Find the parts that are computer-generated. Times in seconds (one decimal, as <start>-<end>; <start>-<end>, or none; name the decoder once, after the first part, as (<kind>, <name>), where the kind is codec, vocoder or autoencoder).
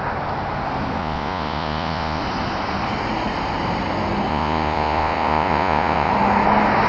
1.0-2.2 (vocoder, Vocos); 4.3-6.1